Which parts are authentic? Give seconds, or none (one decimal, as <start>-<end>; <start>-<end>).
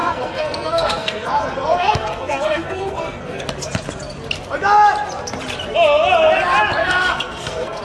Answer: 3.4-6.8